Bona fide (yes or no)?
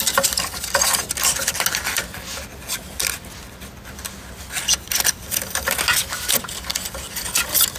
yes